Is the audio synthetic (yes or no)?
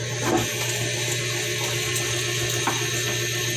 no